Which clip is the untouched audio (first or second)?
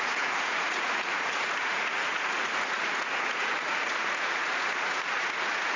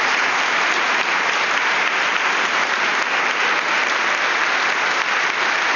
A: second